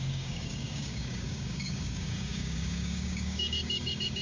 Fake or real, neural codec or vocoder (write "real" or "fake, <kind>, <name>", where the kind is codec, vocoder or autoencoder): fake, codec, DAC